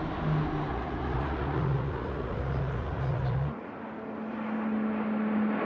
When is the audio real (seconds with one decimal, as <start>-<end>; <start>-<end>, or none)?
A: 0.0-0.7; 3.7-5.7

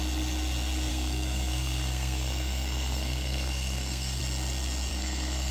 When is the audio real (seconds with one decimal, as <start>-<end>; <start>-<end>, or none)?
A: 0.0-0.9; 4.2-4.9